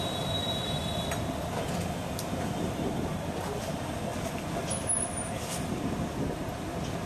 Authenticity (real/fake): real